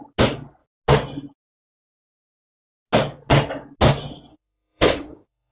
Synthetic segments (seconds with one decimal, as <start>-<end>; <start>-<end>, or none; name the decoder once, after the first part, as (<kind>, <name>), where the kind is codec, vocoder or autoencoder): 4.3-5.5 (autoencoder, DAC-VAE)